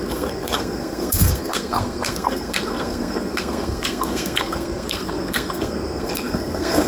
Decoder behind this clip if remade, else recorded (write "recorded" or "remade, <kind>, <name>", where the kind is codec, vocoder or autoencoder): remade, codec, SNAC